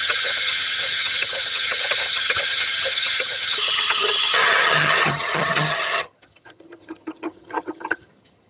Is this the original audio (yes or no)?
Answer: no